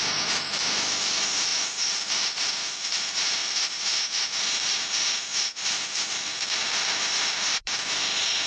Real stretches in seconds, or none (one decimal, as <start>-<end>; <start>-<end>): 0.0-3.4; 4.0-5.3; 7.8-8.5